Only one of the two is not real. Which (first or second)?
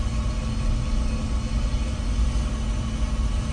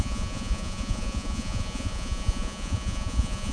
second